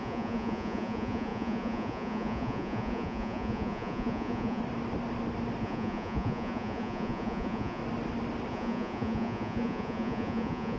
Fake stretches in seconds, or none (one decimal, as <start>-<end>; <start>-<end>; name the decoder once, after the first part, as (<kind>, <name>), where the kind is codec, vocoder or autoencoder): 0.0-4.6 (vocoder, Vocos); 5.6-7.8; 8.5-10.8

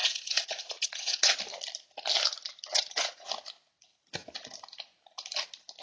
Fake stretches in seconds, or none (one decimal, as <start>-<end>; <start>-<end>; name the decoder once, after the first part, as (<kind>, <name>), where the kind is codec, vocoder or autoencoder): 0.0-1.4 (vocoder, Vocos); 2.7-3.3